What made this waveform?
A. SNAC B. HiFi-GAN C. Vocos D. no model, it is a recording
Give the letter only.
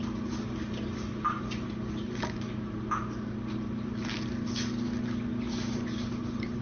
D